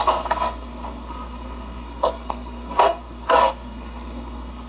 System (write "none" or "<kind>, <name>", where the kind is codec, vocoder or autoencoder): codec, SNAC